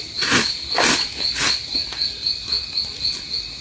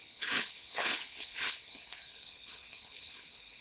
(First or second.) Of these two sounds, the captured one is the first